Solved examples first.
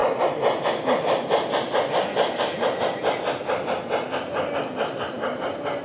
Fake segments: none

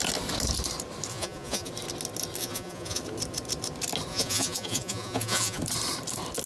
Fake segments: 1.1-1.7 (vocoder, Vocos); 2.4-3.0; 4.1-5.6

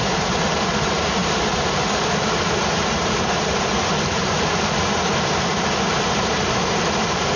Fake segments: 0.0-7.4 (vocoder, BigVGAN v2)

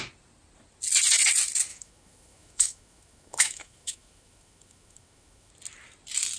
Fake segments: 1.7-5.5 (autoencoder, DAC-VAE)

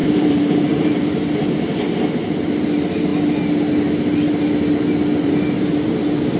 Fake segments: 0.0-0.9 (vocoder, BigVGAN v2); 5.1-5.9

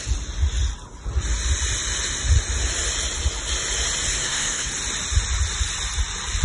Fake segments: 4.1-4.7 (codec, SNAC)

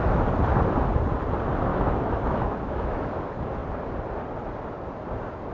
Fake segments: 1.7-3.1 (autoencoder, DAC-VAE)

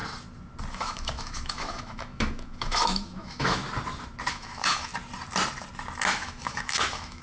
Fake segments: 0.7-3.6 (autoencoder, DAC-VAE); 4.3-4.9; 6.1-7.2